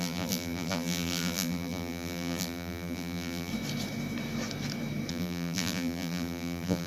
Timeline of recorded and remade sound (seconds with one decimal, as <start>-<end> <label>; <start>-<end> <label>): 0.0-3.5 remade; 3.5-5.1 recorded; 5.1-6.9 remade